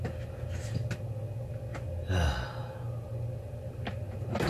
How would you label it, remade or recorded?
recorded